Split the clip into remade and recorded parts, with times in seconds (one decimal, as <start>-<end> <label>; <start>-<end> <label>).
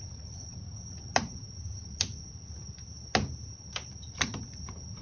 0.0-5.0 recorded